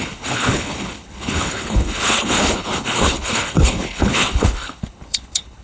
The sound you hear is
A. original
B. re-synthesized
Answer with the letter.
B